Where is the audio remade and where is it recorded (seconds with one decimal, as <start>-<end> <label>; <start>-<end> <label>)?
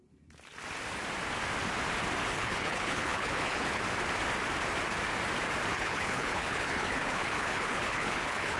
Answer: 0.0-2.2 recorded; 2.2-3.8 remade; 3.8-5.7 recorded; 5.7-8.6 remade